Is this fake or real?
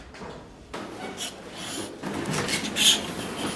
real